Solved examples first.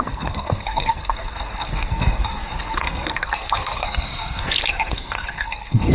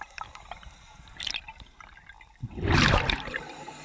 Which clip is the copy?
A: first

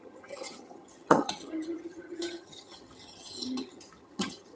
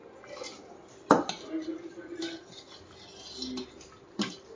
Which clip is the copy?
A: first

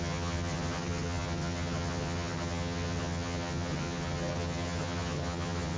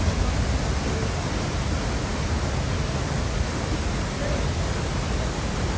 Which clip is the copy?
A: first